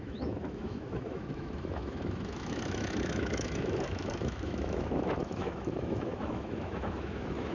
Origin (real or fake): fake